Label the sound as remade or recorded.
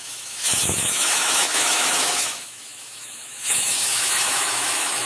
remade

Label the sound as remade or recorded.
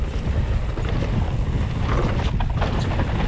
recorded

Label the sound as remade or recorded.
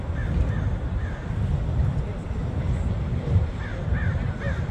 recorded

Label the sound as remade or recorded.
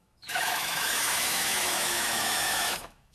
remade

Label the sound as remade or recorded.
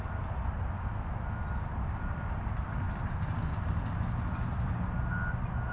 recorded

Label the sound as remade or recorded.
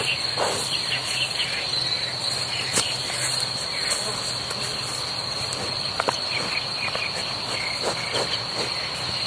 recorded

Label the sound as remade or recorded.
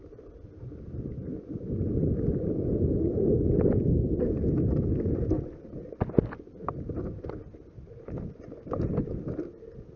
recorded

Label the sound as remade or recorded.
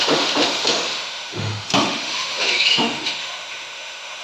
remade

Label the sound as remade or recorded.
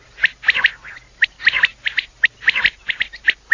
recorded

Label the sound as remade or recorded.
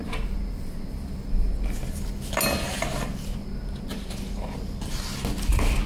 recorded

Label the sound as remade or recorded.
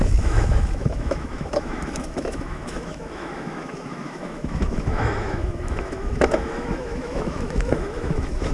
remade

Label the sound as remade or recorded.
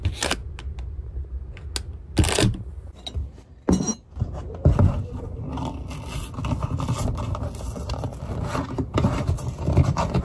recorded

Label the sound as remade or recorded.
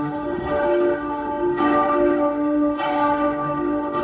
remade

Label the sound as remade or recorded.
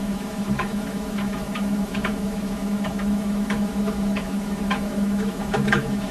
remade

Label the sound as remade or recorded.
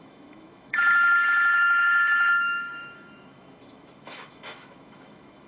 remade